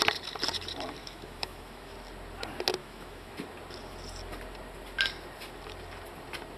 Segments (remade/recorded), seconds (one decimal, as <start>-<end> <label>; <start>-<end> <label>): 0.0-1.0 recorded; 1.0-1.9 remade; 1.9-2.8 recorded; 2.8-3.3 remade; 3.3-6.6 recorded